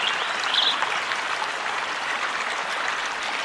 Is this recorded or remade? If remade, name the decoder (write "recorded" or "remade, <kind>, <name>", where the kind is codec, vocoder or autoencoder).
recorded